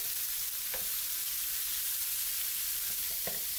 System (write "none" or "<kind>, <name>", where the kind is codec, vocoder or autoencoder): none